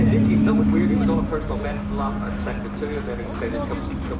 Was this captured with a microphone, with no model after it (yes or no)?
yes